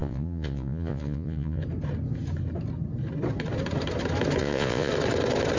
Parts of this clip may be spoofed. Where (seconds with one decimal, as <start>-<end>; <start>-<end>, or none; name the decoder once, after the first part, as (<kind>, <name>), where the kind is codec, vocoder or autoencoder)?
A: 0.0-1.6 (vocoder, Vocos); 4.4-4.9